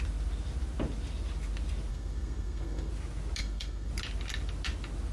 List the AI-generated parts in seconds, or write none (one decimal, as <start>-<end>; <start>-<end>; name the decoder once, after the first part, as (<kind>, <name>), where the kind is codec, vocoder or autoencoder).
1.9-2.9 (codec, SNAC); 3.4-3.9